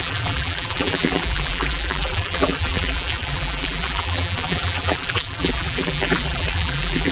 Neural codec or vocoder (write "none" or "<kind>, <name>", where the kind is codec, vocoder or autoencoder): vocoder, BigVGAN v2